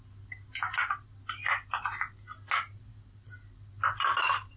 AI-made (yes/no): no